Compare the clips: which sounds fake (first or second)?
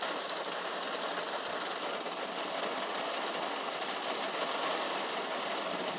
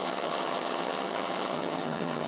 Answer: second